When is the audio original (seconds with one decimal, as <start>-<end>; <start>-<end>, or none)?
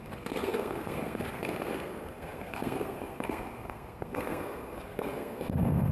none